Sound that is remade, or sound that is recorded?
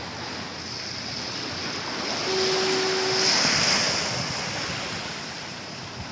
recorded